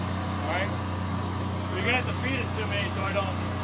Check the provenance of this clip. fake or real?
real